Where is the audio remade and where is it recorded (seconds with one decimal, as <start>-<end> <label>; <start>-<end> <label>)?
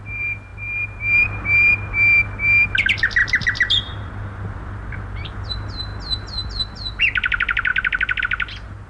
0.0-3.2 recorded; 3.2-5.5 remade; 5.5-8.9 recorded